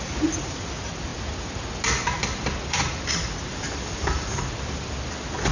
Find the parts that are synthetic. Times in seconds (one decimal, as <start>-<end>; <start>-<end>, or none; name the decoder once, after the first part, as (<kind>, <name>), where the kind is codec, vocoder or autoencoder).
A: none